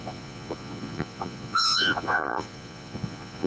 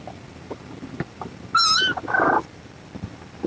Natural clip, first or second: second